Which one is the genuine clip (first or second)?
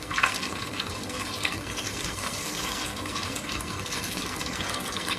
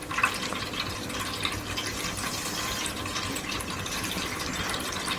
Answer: second